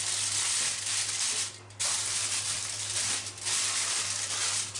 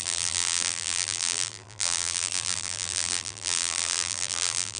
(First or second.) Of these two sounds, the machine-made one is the second